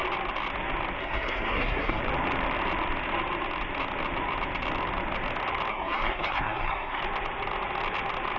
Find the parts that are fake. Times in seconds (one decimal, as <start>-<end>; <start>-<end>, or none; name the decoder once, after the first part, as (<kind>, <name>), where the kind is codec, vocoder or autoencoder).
1.0-2.0 (codec, SNAC); 5.7-7.0